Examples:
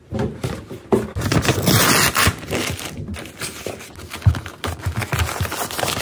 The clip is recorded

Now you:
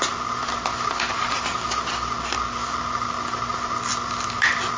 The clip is recorded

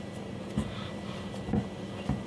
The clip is recorded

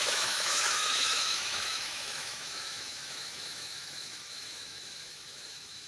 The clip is remade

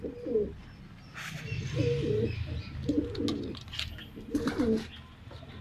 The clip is recorded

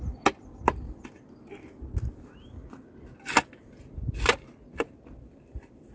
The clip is recorded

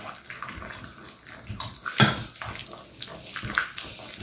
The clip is recorded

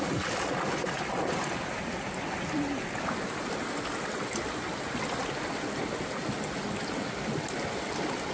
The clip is recorded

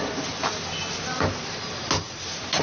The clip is recorded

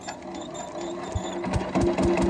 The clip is recorded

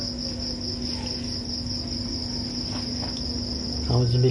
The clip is recorded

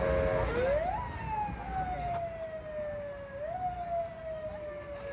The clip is recorded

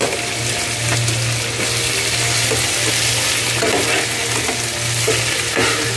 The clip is recorded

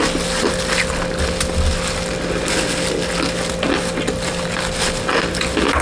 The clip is recorded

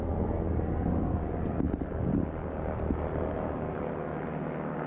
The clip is recorded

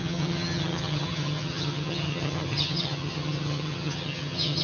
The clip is remade